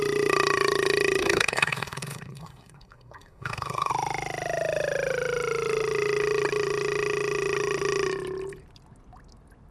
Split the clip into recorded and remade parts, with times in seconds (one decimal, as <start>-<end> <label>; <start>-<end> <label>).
0.0-1.2 recorded; 1.2-3.9 remade; 3.9-9.7 recorded